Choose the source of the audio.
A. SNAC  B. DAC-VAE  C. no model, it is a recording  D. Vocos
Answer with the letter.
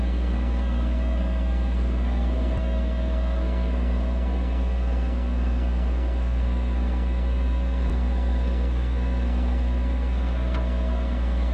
A